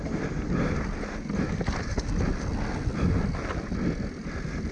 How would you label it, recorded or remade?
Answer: recorded